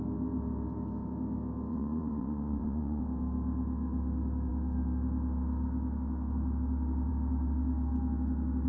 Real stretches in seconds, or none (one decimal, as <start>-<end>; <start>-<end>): 0.0-1.7; 3.0-8.7